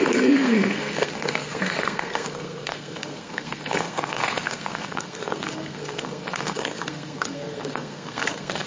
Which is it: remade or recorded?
remade